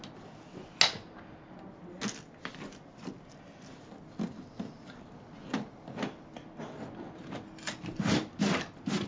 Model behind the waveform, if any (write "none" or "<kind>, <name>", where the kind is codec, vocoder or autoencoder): none